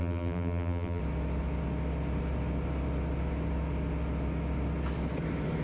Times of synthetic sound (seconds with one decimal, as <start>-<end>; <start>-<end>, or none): 0.0-1.0